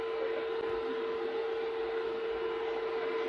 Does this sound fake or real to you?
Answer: real